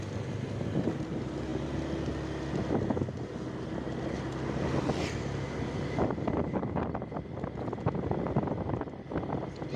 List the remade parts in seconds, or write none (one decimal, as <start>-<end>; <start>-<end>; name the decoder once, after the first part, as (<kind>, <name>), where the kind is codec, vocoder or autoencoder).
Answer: none